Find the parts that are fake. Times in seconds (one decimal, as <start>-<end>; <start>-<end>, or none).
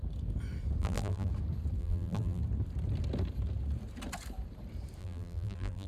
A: 0.8-1.3; 1.8-2.4; 5.0-5.9